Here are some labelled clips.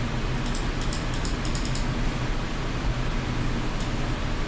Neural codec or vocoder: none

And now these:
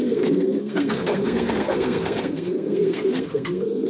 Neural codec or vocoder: codec, SNAC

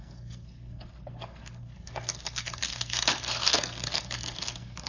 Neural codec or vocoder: codec, SNAC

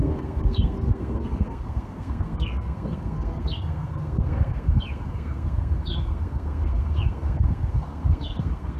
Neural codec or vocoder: codec, SNAC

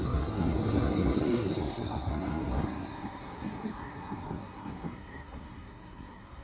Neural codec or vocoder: codec, SNAC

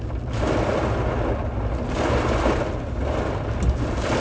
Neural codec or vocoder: none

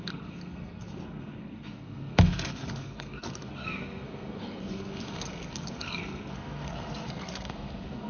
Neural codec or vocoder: codec, SNAC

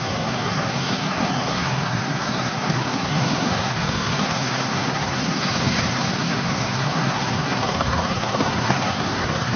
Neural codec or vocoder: codec, SNAC